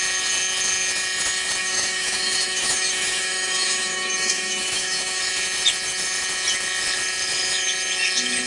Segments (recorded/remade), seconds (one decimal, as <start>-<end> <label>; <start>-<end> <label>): 0.0-1.6 recorded; 1.6-5.2 remade; 5.2-8.5 recorded